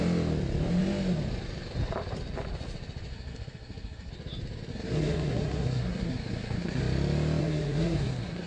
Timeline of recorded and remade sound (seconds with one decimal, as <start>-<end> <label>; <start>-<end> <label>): 0.0-3.1 recorded; 3.1-4.1 remade; 4.1-4.7 recorded; 4.7-6.8 remade; 6.8-7.4 recorded; 7.4-8.5 remade